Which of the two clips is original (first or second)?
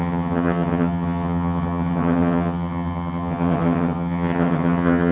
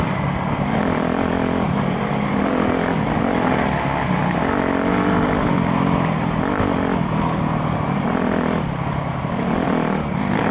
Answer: second